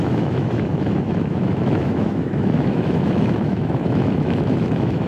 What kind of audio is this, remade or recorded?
remade